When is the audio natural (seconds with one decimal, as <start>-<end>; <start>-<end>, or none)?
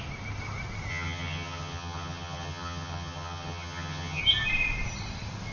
0.0-0.9; 4.2-5.5